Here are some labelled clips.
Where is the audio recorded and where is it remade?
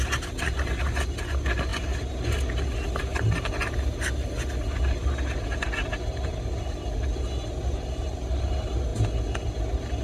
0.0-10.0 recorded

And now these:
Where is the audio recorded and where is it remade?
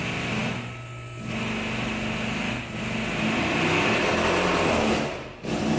0.0-5.8 recorded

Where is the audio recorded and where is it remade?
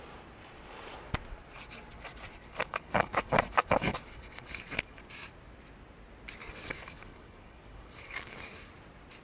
0.0-2.3 recorded; 2.3-5.0 remade; 5.0-6.4 recorded; 6.4-8.7 remade; 8.7-9.2 recorded